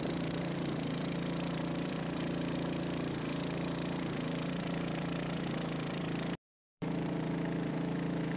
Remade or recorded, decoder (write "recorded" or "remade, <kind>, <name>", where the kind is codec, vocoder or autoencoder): remade, vocoder, BigVGAN v2